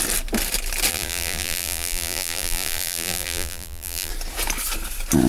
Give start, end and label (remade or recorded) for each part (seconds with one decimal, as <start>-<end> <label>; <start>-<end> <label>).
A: 0.0-0.9 recorded; 0.9-4.1 remade; 4.1-5.3 recorded